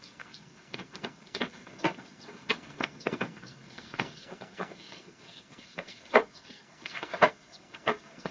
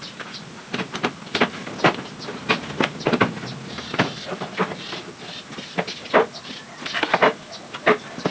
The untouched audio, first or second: second